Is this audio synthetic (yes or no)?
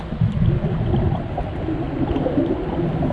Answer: no